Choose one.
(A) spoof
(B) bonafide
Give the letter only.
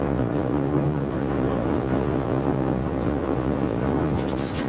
A